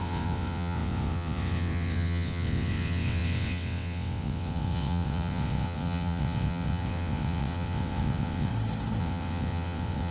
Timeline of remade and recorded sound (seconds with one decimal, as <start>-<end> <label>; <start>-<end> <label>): 0.0-8.5 remade; 8.5-9.0 recorded; 9.0-10.1 remade